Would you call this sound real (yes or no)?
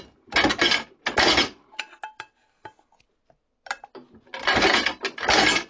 yes